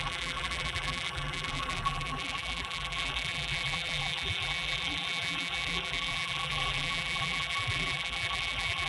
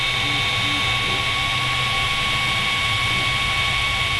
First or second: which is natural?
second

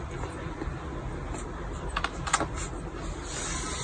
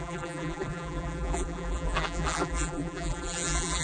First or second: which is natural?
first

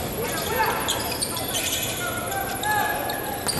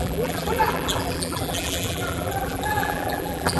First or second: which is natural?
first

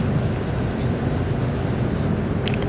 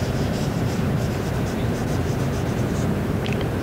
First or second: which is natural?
first